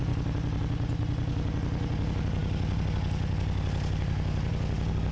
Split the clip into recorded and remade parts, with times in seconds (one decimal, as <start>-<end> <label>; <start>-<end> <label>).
0.0-5.1 recorded